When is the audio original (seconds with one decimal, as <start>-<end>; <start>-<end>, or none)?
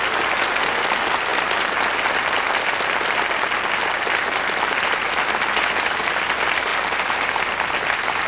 0.0-8.3